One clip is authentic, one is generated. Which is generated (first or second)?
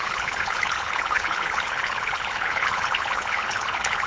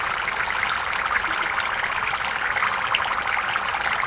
first